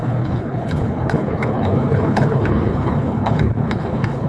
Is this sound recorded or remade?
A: remade